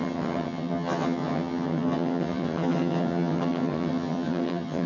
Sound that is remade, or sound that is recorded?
remade